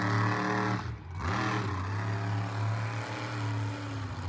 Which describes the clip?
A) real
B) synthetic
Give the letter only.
A